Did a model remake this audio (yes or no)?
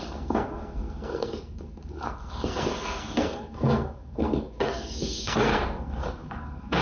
yes